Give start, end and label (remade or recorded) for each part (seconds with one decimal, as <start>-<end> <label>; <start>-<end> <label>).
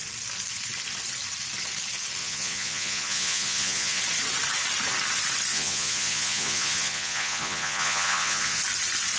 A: 0.0-2.2 recorded; 2.2-4.0 remade; 4.0-5.5 recorded; 5.5-8.6 remade; 8.6-9.2 recorded